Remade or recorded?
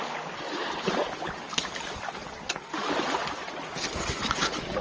recorded